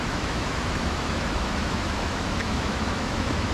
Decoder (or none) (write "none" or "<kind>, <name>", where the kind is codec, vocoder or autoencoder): autoencoder, DAC-VAE